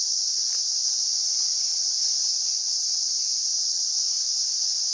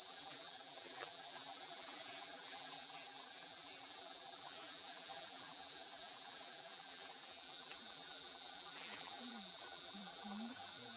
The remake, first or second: second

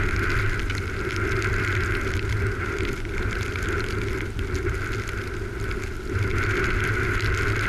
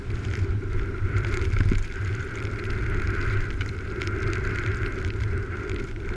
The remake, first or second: second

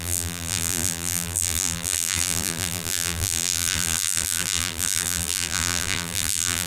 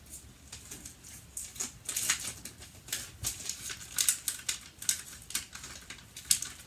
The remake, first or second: first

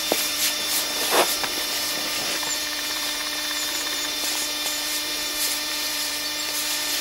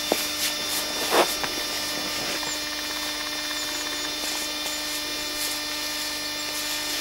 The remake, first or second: first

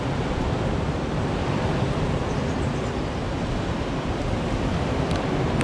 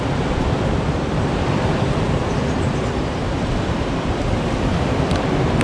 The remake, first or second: second